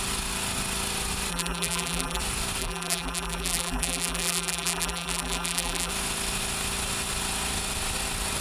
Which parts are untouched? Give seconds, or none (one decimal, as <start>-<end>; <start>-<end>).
0.0-1.3; 2.2-2.6; 5.9-8.4